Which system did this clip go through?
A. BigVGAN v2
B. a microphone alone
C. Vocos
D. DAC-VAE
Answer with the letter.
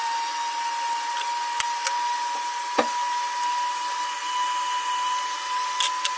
B